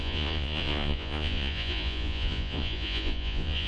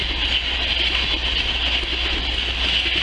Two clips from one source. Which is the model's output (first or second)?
first